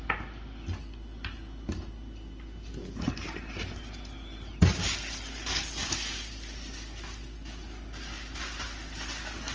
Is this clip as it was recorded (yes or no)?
yes